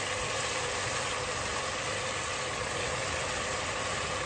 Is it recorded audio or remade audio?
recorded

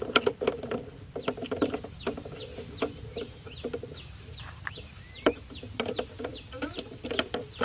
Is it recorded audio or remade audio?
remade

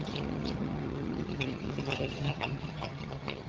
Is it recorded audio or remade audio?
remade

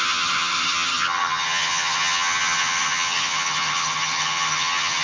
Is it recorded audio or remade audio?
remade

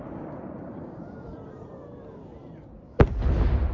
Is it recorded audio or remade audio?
remade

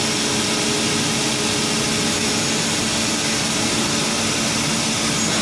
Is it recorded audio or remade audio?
recorded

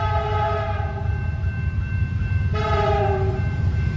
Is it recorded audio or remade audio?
remade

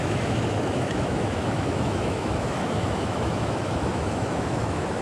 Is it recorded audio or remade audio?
remade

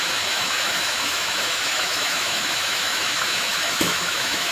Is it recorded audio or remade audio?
remade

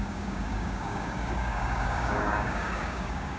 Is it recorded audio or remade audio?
remade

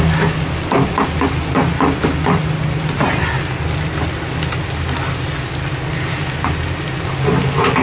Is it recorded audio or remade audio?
recorded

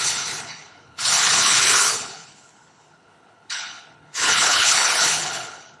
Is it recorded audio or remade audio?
remade